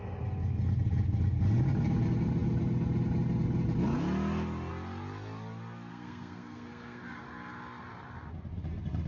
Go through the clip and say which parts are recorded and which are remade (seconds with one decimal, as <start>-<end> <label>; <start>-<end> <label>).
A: 0.0-5.9 recorded; 5.9-7.2 remade; 7.2-9.1 recorded